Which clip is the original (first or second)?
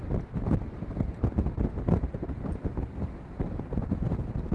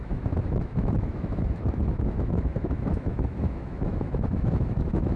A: first